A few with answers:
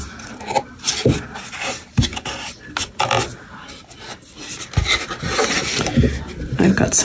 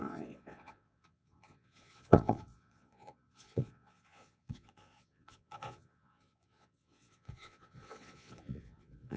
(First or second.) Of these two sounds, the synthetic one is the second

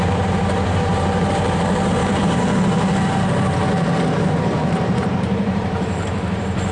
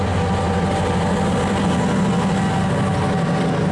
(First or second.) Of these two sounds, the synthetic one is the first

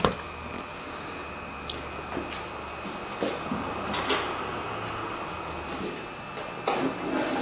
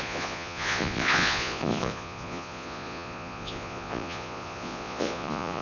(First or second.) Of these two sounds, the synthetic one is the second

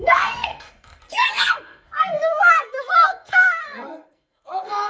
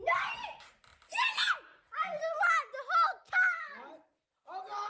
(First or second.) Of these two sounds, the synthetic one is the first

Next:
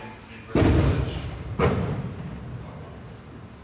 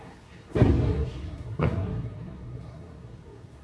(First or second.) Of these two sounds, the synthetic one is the second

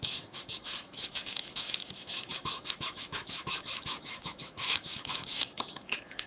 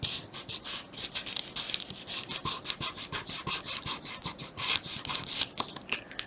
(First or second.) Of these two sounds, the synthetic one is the first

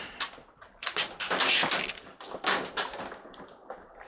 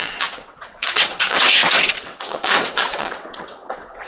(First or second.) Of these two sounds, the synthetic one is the second